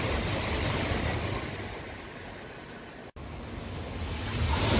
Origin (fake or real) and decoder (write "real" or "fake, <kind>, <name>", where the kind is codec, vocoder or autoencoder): real